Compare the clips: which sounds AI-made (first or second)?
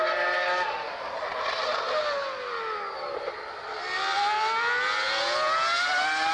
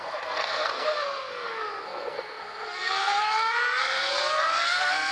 second